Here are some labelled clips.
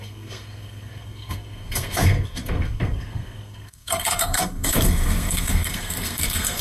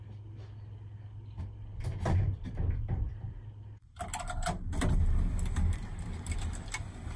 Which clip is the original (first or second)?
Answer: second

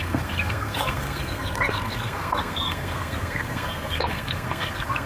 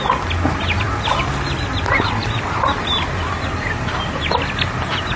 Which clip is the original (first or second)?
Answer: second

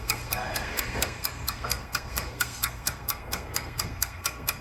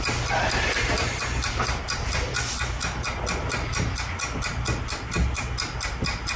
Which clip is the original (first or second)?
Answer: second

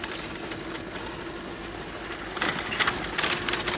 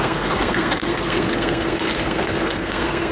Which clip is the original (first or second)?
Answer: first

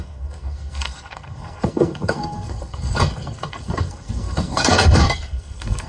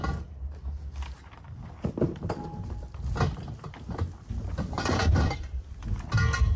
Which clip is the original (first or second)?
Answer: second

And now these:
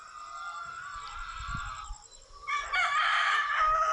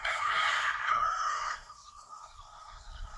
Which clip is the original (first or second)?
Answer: first